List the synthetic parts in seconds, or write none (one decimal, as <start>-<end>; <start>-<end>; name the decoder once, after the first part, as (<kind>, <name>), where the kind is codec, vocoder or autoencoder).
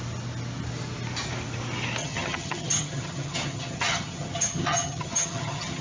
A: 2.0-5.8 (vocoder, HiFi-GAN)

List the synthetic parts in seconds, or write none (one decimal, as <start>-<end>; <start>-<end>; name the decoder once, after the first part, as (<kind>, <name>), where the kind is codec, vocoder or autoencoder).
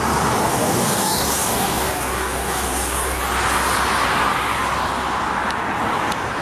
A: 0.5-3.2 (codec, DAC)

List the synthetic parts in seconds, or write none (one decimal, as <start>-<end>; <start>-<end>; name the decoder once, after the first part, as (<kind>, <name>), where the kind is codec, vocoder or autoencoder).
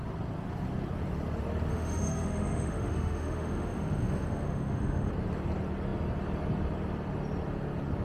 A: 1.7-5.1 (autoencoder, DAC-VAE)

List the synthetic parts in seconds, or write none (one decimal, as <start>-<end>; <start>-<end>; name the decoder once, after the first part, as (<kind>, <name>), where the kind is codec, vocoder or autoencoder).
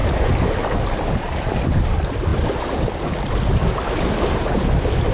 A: none